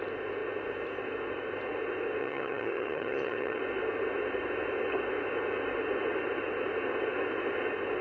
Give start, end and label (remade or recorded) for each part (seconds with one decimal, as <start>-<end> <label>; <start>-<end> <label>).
0.0-2.2 recorded; 2.2-3.6 remade; 3.6-8.0 recorded